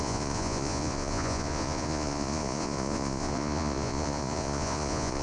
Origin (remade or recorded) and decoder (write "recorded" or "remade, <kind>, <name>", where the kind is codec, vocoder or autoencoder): remade, vocoder, Vocos